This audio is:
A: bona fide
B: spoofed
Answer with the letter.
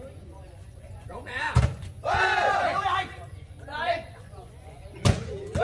B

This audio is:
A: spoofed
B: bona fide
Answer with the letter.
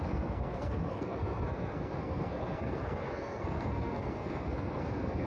A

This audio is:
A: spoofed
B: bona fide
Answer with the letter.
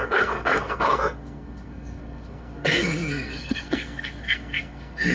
A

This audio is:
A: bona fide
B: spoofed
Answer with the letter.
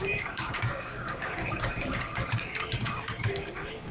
B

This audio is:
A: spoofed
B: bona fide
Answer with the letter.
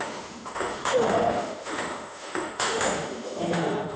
A